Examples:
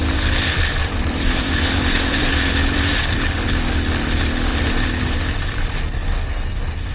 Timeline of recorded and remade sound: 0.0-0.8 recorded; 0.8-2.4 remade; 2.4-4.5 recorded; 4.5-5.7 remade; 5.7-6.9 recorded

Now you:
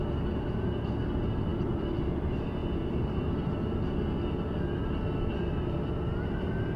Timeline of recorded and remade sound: 0.0-1.5 recorded; 1.5-2.0 remade; 2.0-6.8 recorded